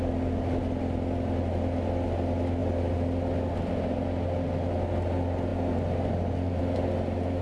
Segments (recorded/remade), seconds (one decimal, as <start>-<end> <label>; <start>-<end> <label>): 0.0-7.4 recorded